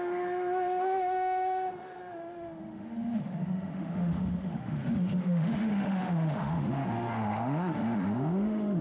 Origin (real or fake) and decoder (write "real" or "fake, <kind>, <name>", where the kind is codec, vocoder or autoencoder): fake, autoencoder, DAC-VAE